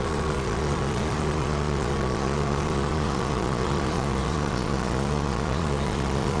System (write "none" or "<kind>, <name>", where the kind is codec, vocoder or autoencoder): vocoder, Vocos